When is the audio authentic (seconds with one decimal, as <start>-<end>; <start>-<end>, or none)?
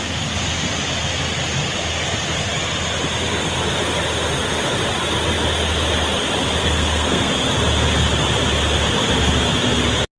0.0-6.6; 7.3-10.2